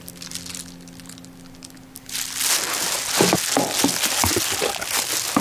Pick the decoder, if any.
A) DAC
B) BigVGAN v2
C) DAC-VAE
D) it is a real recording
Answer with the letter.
D